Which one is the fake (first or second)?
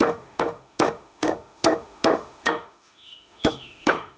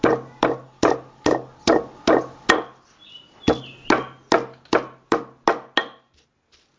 first